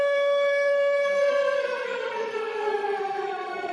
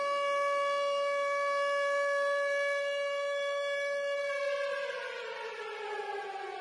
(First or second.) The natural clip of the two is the second